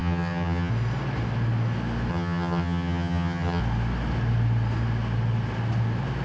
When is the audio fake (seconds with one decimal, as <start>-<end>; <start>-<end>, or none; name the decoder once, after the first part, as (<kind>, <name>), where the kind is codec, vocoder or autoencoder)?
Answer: 0.0-0.7 (vocoder, HiFi-GAN); 2.1-3.6